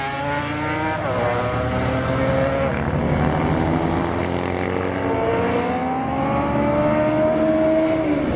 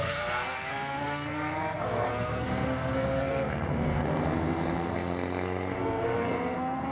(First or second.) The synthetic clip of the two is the second